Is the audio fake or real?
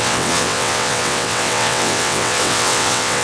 fake